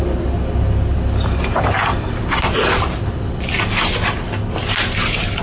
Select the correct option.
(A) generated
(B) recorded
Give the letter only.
B